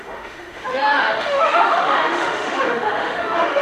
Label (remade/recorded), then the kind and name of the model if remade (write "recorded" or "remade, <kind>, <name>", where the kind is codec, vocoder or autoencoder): remade, autoencoder, DAC-VAE